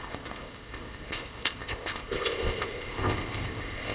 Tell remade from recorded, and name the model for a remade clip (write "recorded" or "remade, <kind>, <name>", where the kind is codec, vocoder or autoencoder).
remade, codec, ZipCodec